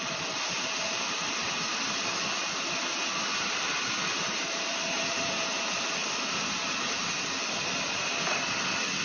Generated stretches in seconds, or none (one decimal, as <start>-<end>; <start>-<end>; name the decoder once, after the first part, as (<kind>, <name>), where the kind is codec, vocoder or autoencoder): 0.0-1.7 (vocoder, BigVGAN v2); 4.4-6.0